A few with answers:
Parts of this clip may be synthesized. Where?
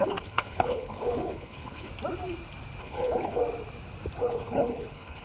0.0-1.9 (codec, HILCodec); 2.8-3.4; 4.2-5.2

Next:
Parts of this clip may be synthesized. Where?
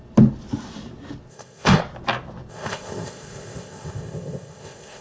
1.3-1.8 (codec, ZipCodec); 2.5-5.0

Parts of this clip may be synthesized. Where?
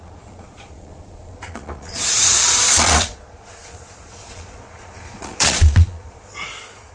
0.0-6.9 (vocoder, Vocos)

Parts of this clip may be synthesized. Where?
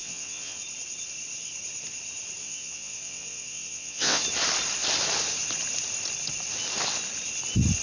0.0-0.6 (vocoder, WaveNeXt); 2.4-4.2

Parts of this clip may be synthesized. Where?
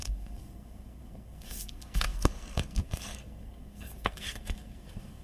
0.0-5.2 (codec, SNAC)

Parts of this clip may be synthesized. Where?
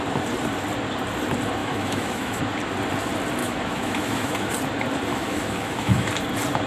1.6-2.4 (autoencoder, DAC-VAE); 3.4-4.5; 5.1-6.1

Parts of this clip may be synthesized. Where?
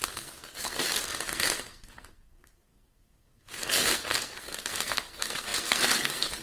0.0-6.4 (codec, SNAC)